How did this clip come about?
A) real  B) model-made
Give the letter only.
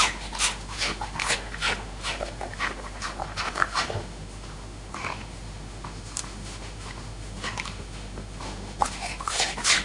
B